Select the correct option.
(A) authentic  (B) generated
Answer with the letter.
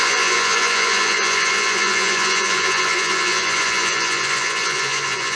B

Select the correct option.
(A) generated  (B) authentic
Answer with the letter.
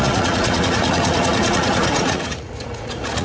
A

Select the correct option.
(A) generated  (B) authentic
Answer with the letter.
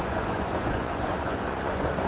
A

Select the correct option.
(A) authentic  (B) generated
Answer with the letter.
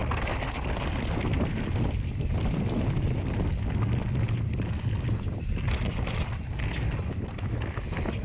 A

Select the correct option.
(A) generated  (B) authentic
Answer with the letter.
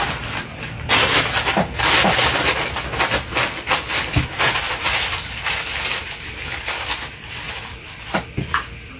B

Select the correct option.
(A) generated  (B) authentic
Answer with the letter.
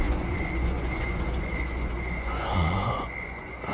A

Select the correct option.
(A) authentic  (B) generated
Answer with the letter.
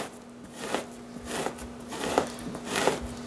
A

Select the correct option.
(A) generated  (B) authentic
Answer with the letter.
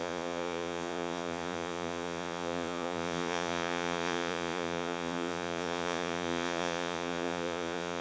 A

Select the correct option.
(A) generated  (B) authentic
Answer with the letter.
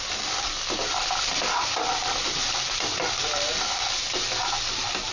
B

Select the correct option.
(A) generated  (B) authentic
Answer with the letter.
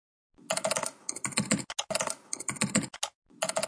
B